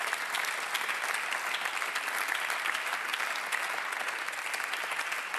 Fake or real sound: real